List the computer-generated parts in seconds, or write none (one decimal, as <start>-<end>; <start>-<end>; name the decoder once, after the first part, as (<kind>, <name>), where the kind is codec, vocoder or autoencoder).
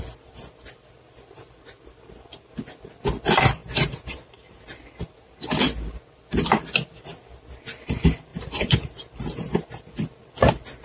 3.6-5.1 (vocoder, BigVGAN v2); 8.3-9.8